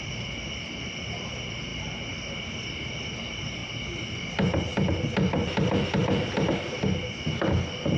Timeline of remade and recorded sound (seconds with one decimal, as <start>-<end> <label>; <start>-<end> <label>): 0.0-8.0 recorded